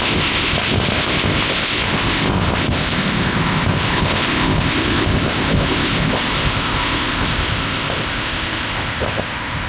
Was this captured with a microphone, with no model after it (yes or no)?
no